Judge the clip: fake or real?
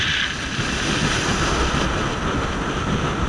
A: real